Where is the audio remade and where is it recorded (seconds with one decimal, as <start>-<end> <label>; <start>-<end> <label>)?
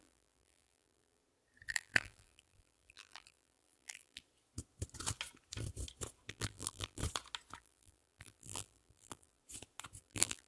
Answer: 0.0-1.2 remade; 1.2-1.7 recorded; 1.7-4.2 remade; 4.2-6.3 recorded; 6.3-7.0 remade; 7.0-7.6 recorded; 7.6-9.4 remade; 9.4-10.0 recorded; 10.0-10.5 remade